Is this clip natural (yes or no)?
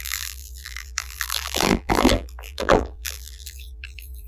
no